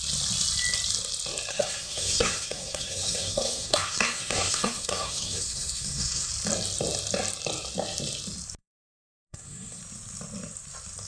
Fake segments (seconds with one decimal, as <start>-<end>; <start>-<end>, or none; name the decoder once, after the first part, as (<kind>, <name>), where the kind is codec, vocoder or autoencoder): 1.5-6.3 (codec, SNAC); 8.6-9.8